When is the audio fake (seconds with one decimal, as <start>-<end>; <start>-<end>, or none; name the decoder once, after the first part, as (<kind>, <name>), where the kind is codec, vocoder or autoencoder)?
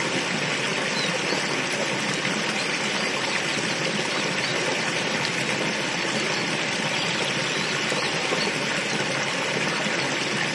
4.5-8.7 (vocoder, BigVGAN v2)